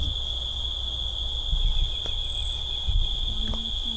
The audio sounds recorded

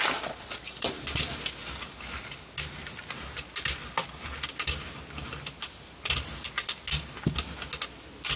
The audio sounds recorded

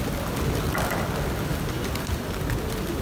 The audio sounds recorded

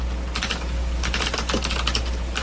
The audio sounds remade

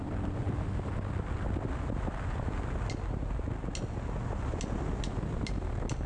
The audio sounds recorded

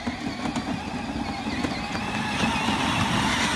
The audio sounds recorded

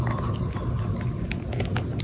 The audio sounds recorded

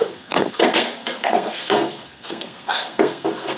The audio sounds remade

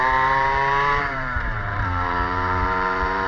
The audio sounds remade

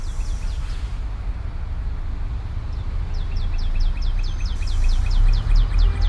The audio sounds recorded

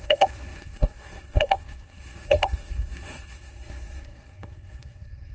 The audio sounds remade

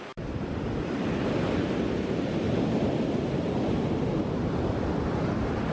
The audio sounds recorded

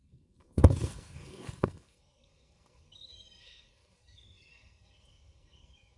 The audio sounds remade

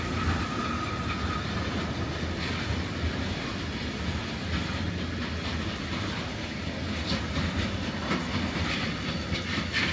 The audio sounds recorded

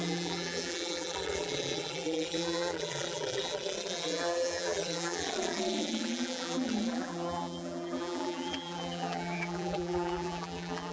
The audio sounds remade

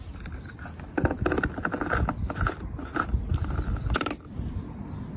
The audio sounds recorded